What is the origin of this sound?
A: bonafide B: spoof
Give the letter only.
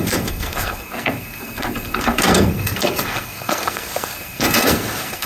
B